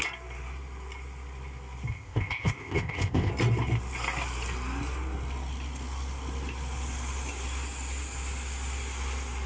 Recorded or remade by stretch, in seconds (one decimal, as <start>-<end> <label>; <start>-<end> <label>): 0.0-1.9 recorded; 1.9-3.3 remade; 3.3-9.5 recorded